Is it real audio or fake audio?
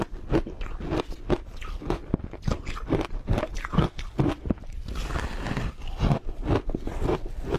real